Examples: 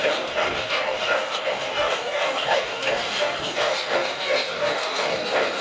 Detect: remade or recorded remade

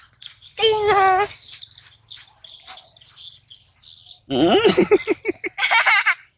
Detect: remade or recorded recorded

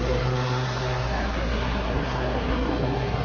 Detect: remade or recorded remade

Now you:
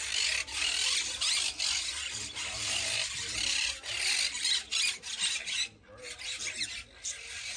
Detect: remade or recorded recorded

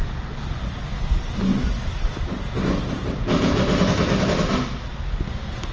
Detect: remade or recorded recorded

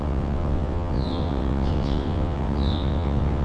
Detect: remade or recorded remade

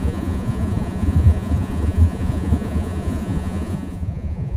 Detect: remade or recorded remade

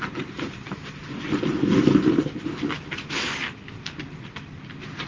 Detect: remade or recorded recorded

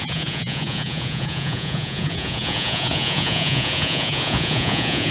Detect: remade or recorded remade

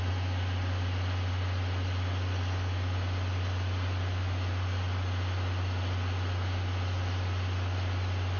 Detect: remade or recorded recorded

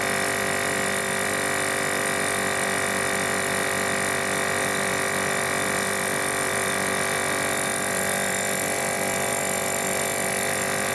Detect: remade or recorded remade